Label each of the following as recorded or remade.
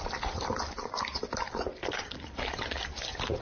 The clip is recorded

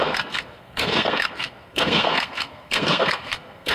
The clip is remade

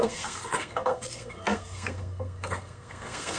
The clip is remade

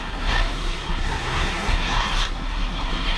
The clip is remade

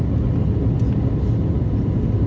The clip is recorded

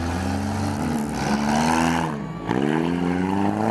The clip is recorded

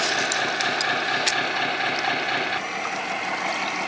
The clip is recorded